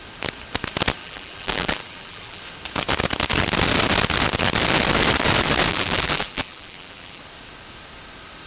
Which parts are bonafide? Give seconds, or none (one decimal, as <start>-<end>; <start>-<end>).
0.0-1.0; 2.4-5.7; 7.2-8.5